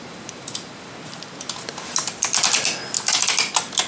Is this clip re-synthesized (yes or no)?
no